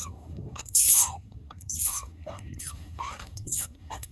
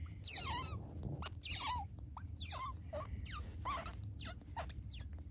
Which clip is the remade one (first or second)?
first